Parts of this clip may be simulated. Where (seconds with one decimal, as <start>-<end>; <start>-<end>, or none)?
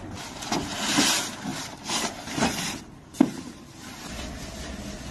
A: none